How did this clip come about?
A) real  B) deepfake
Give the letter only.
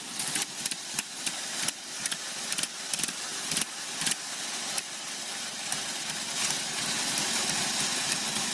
A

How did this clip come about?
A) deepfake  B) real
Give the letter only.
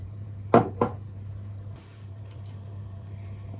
A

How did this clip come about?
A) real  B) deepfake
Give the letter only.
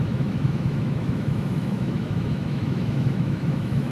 B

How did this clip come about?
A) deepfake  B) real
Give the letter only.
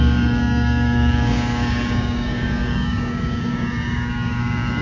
A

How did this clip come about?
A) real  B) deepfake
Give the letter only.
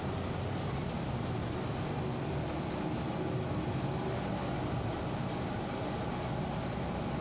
A